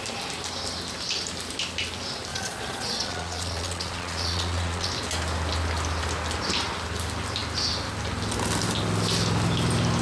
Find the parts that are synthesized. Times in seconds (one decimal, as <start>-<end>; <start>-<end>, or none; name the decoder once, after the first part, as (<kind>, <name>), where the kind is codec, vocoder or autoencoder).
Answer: 2.3-4.9 (vocoder, Vocos)